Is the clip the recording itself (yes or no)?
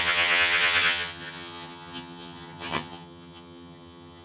no